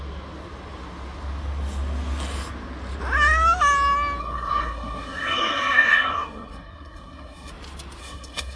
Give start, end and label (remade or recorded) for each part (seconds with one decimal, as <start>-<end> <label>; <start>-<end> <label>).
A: 0.0-4.2 recorded; 4.2-7.5 remade; 7.5-8.0 recorded; 8.0-8.6 remade